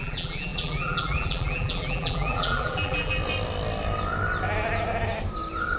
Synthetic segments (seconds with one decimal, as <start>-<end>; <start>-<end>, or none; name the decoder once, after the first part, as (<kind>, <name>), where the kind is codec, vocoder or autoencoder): 0.0-3.2 (vocoder, BigVGAN v2)